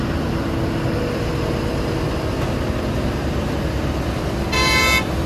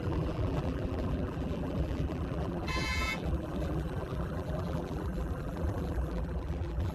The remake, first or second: second